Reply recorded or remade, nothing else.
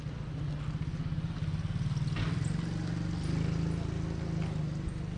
recorded